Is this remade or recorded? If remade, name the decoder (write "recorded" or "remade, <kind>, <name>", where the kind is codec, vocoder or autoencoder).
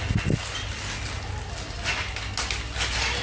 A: recorded